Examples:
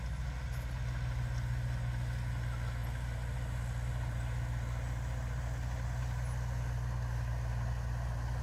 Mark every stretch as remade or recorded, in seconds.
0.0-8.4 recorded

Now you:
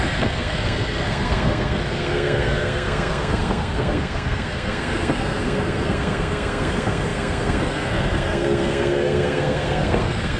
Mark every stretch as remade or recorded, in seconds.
0.0-10.4 remade

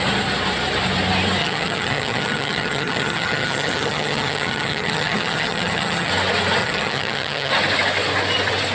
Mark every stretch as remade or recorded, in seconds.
0.0-1.4 recorded; 1.4-6.1 remade; 6.1-6.6 recorded; 6.6-7.5 remade; 7.5-8.7 recorded

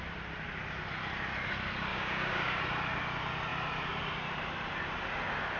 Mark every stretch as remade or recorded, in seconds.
0.0-1.9 recorded; 1.9-2.6 remade; 2.6-5.6 recorded

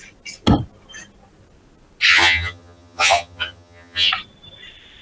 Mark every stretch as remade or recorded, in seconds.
0.0-2.1 recorded; 2.1-4.1 remade; 4.1-5.0 recorded